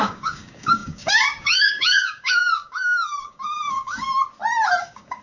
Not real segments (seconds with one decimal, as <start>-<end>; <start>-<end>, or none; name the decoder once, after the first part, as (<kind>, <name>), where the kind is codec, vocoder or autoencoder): 0.0-4.2 (codec, DAC); 4.8-5.2